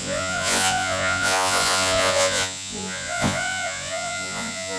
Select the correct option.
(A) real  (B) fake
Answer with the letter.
B